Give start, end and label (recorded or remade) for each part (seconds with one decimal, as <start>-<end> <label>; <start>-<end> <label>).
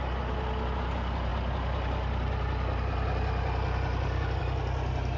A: 0.0-5.2 recorded